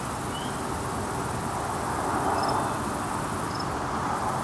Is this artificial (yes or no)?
no